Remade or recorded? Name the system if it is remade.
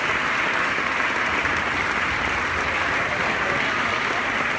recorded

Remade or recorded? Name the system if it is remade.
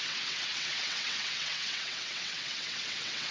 remade, vocoder, WaveNeXt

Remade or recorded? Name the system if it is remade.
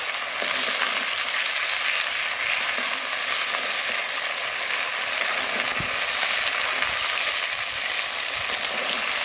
recorded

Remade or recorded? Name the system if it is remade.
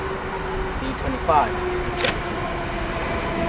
recorded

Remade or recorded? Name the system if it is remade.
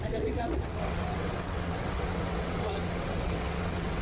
remade, vocoder, WaveNeXt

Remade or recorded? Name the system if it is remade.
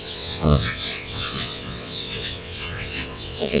remade, vocoder, WaveNeXt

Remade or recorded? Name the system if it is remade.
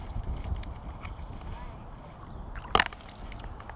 recorded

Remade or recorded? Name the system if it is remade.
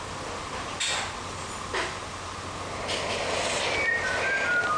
recorded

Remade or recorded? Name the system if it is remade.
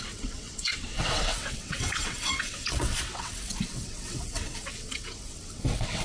remade, vocoder, WaveNeXt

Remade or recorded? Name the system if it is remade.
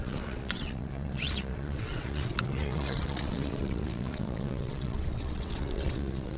remade, vocoder, WaveNeXt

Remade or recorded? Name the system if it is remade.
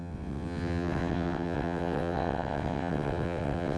remade, vocoder, WaveNeXt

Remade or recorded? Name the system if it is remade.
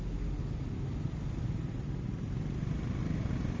recorded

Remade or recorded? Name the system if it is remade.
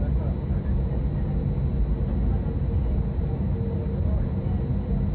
recorded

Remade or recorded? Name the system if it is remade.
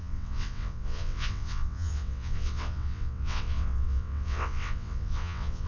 remade, vocoder, WaveNeXt